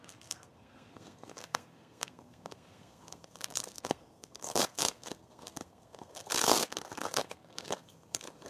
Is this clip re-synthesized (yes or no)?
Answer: yes